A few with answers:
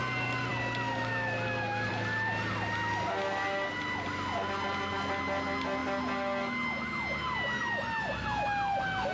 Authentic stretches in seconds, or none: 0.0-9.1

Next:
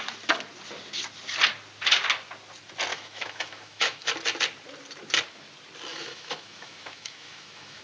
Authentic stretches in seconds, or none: 0.0-2.9; 4.1-5.9

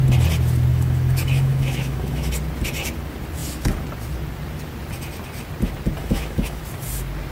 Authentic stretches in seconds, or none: 0.0-0.7; 2.3-6.0; 6.6-7.3